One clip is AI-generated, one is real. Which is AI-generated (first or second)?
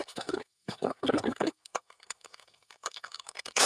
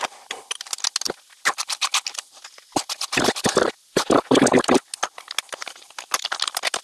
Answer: first